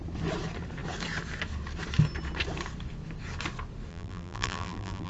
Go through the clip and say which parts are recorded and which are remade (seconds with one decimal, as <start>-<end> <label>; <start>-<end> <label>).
0.0-3.9 recorded; 3.9-5.1 remade